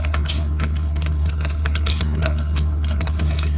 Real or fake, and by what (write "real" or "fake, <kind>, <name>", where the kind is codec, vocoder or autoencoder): fake, codec, SNAC